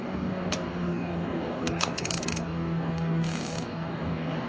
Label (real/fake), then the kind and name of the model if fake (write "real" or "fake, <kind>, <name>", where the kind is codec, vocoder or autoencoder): fake, codec, DAC